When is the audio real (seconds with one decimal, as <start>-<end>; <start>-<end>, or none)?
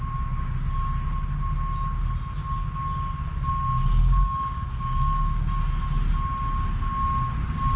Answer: 0.0-4.0; 5.6-7.8